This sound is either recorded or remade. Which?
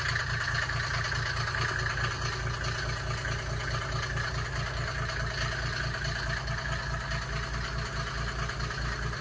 recorded